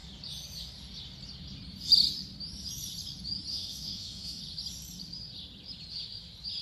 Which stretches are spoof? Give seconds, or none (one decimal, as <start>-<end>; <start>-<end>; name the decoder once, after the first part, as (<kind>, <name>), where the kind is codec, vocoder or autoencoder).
3.5-4.4 (autoencoder, DAC-VAE)